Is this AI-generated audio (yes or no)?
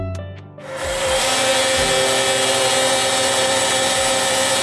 no